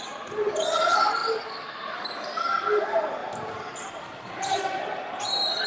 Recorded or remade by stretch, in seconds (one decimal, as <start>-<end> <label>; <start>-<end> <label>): 0.0-3.2 recorded; 3.2-4.8 remade; 4.8-5.7 recorded